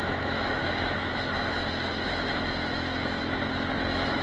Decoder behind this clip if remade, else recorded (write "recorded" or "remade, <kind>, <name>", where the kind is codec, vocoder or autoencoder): remade, autoencoder, DAC-VAE